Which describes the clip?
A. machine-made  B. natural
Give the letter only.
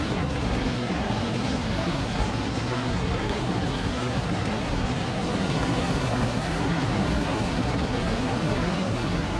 A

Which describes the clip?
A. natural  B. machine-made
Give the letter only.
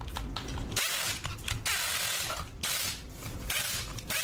A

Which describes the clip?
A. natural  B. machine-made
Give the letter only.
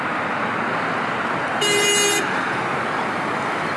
A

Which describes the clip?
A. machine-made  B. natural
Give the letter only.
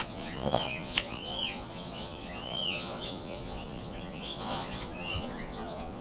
A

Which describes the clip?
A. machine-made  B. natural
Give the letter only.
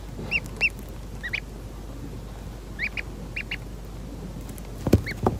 B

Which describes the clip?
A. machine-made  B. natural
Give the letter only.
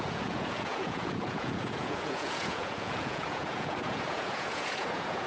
A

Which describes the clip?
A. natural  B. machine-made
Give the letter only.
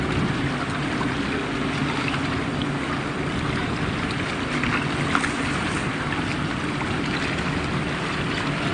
A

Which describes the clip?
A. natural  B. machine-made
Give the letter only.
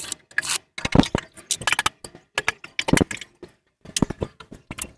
A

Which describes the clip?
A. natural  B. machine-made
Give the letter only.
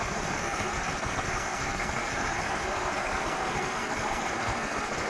B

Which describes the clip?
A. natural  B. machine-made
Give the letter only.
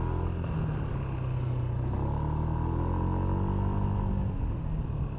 A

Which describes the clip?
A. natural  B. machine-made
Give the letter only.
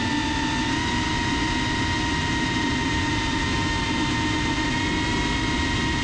A